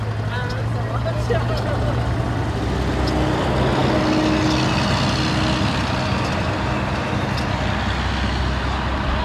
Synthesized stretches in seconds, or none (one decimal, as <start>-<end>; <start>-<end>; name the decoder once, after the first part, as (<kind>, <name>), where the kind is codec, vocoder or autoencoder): none